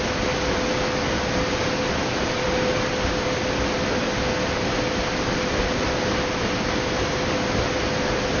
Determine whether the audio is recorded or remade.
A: recorded